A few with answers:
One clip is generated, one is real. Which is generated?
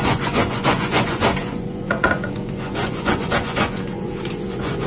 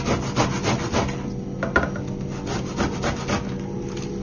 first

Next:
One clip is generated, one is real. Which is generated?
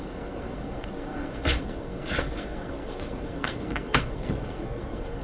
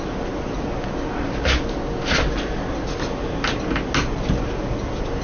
first